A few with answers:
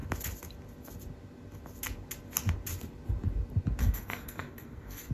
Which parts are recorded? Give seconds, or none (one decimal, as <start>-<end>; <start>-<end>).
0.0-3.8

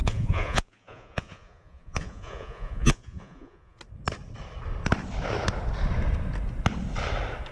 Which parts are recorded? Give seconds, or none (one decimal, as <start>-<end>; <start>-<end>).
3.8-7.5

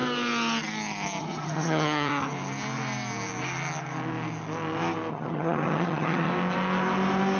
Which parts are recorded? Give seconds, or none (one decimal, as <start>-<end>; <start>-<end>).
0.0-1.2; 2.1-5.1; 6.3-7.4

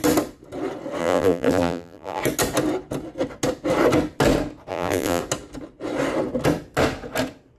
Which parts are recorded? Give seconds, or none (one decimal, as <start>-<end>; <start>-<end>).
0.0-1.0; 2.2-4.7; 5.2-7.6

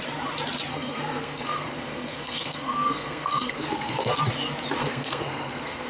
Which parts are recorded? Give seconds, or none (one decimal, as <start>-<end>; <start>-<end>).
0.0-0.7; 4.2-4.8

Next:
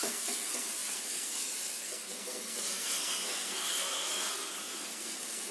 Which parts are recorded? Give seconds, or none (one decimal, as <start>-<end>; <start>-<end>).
none

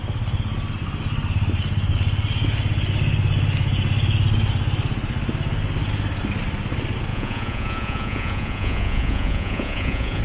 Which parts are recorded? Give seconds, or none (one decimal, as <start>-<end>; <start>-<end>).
0.0-7.1

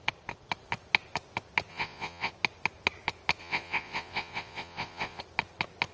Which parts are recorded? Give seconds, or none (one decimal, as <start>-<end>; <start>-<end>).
0.0-1.7; 2.3-3.4; 5.2-5.9